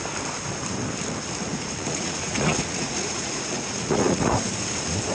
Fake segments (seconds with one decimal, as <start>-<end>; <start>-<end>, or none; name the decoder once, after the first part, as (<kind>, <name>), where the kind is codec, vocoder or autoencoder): 1.5-4.6 (vocoder, Vocos)